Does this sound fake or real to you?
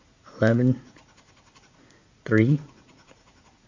fake